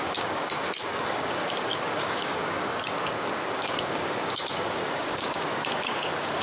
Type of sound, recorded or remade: remade